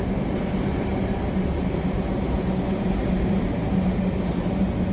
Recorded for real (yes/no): no